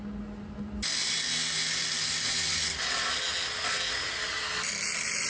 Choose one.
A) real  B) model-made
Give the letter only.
A